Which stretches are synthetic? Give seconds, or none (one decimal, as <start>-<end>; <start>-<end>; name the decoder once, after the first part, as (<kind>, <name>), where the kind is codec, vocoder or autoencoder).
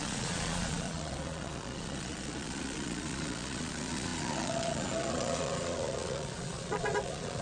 0.0-7.4 (vocoder, Vocos)